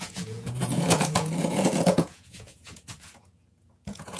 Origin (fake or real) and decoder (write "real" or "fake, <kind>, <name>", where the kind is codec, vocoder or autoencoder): fake, vocoder, Vocos